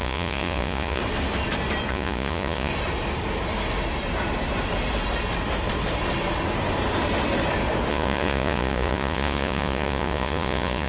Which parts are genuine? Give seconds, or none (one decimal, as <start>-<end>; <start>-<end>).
1.0-1.9; 2.7-7.9